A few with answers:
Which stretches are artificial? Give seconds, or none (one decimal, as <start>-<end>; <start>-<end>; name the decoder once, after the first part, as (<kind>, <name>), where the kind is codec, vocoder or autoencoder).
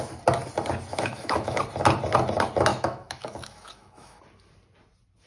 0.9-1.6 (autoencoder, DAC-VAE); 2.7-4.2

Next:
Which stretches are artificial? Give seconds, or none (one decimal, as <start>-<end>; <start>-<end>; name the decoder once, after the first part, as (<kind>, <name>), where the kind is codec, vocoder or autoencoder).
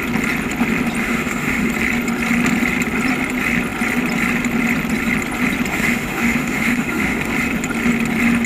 1.0-1.7 (autoencoder, DAC-VAE); 5.7-7.3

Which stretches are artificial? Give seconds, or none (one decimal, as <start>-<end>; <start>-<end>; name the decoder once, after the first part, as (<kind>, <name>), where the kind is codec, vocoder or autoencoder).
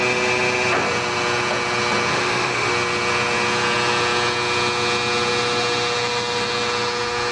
2.1-2.7 (autoencoder, DAC-VAE)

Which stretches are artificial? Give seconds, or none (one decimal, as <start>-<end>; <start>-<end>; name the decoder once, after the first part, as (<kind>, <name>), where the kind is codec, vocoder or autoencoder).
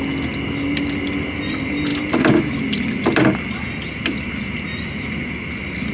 none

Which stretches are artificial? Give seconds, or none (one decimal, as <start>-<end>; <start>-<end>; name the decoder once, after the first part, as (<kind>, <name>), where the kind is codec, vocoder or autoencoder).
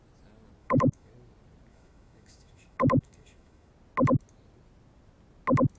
0.6-1.1 (autoencoder, DAC-VAE); 1.7-3.7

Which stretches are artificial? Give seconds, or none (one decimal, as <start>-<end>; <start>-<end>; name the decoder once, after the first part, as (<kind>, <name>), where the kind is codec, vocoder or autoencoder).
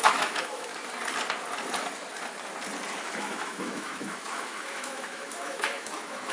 0.0-0.7 (autoencoder, DAC-VAE); 3.0-6.3